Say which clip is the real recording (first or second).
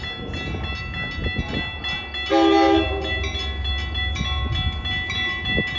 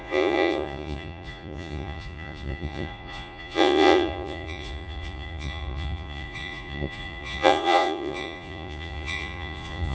first